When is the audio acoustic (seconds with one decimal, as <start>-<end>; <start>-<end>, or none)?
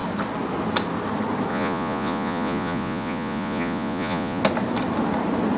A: 0.0-1.5; 4.4-5.6